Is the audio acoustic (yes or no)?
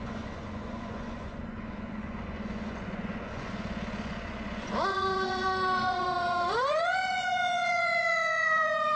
no